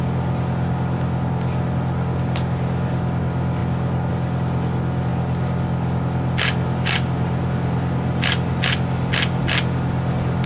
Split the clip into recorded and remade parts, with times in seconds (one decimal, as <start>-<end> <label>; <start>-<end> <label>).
0.0-10.5 recorded